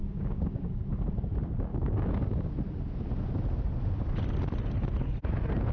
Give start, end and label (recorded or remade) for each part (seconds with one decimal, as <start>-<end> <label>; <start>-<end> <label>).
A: 0.0-0.8 remade; 0.8-1.7 recorded; 1.7-2.5 remade; 2.5-5.7 recorded

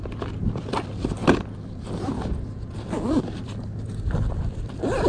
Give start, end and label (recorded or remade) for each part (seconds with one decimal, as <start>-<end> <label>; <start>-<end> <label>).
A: 0.0-5.1 remade

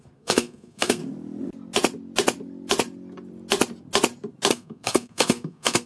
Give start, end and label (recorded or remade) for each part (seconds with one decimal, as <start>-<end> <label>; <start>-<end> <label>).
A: 0.0-1.0 remade; 1.0-4.5 recorded; 4.5-5.9 remade